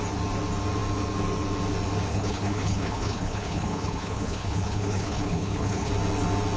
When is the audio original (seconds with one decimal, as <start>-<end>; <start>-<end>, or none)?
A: 0.0-2.1; 5.9-6.6